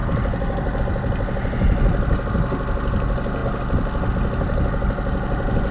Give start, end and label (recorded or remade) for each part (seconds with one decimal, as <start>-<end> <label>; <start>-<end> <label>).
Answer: 0.0-0.8 remade; 0.8-3.4 recorded; 3.4-4.1 remade; 4.1-5.7 recorded

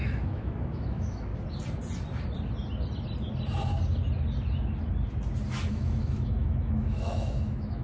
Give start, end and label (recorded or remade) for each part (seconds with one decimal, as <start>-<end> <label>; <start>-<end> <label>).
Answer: 0.0-1.3 remade; 1.3-5.7 recorded; 5.7-7.8 remade

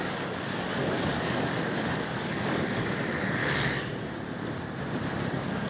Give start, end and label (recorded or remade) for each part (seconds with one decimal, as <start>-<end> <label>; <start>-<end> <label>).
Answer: 0.0-3.4 remade; 3.4-5.3 recorded; 5.3-5.7 remade

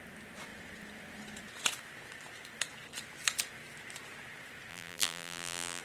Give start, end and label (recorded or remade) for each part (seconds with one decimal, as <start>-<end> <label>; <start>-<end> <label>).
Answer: 0.0-4.7 recorded; 4.7-5.8 remade

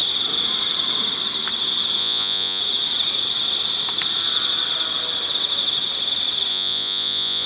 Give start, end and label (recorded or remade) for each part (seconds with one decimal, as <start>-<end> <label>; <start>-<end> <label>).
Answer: 0.0-2.0 recorded; 2.0-2.6 remade; 2.6-6.5 recorded; 6.5-7.5 remade

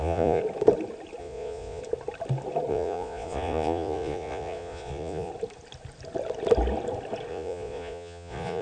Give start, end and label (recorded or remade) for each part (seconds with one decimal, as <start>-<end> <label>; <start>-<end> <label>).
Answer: 0.0-0.4 remade; 0.4-1.2 recorded; 1.2-1.8 remade; 1.8-2.7 recorded; 2.7-5.3 remade; 5.3-7.3 recorded; 7.3-8.6 remade

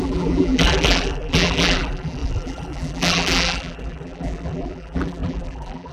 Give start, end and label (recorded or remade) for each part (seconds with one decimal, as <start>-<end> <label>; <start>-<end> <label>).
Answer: 0.0-5.9 remade

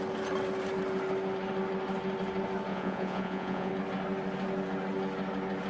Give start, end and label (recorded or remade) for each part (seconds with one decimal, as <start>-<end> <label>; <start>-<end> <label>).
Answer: 0.0-2.7 recorded; 2.7-3.7 remade; 3.7-5.7 recorded